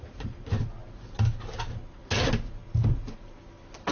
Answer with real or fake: real